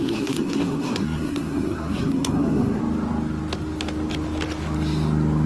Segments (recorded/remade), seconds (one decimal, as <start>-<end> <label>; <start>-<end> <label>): 0.0-2.8 remade; 2.8-5.5 recorded

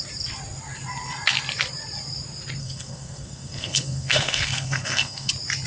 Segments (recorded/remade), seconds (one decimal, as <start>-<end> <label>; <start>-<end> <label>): 0.0-2.6 recorded; 2.6-5.3 remade; 5.3-5.7 recorded

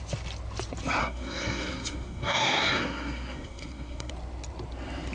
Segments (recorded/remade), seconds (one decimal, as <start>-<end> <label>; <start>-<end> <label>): 0.0-1.0 recorded; 1.0-4.1 remade; 4.1-5.1 recorded

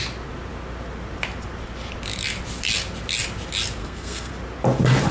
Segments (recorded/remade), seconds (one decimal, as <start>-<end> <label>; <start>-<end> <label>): 0.0-3.8 recorded; 3.8-4.3 remade; 4.3-5.1 recorded

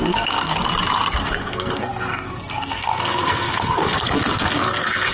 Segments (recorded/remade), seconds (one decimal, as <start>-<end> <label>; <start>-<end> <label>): 0.0-0.5 remade; 0.5-1.2 recorded; 1.2-5.1 remade

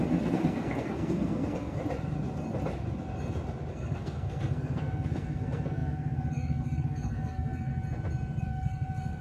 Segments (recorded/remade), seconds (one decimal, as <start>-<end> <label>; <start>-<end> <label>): 0.0-1.8 remade; 1.8-3.7 recorded; 3.7-7.7 remade; 7.7-8.4 recorded; 8.4-9.2 remade

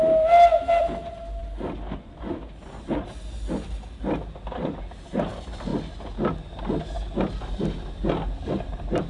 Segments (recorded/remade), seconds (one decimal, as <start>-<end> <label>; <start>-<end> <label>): 0.0-9.1 recorded